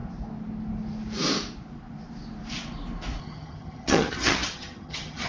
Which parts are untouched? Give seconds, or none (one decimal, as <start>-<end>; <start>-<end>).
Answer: 0.0-3.2